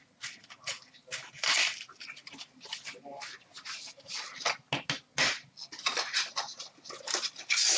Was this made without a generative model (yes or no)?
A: yes